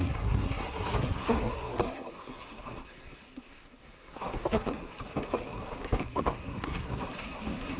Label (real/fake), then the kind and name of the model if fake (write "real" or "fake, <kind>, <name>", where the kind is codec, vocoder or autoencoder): fake, codec, SNAC